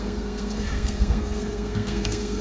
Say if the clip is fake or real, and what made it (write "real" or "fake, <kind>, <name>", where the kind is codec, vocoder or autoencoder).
fake, codec, SNAC